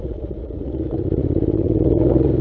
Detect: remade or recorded remade